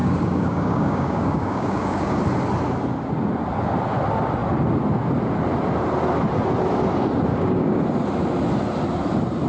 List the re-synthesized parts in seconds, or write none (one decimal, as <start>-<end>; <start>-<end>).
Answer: 0.0-2.2; 7.3-7.8